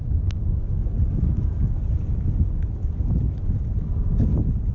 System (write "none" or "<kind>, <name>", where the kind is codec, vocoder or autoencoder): none